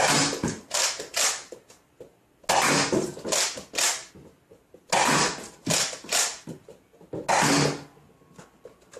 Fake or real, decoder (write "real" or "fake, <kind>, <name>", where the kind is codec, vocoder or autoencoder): real